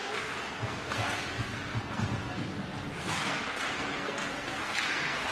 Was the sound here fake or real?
fake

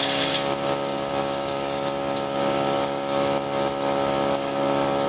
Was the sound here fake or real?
fake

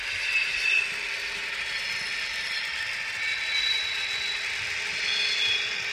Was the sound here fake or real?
real